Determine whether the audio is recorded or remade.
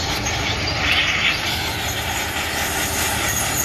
recorded